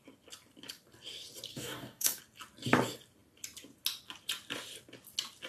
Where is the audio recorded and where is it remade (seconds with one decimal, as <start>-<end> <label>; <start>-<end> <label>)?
0.0-1.5 recorded; 1.5-2.2 remade; 2.2-5.5 recorded